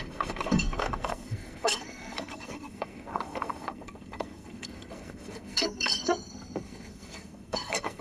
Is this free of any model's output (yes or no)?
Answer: no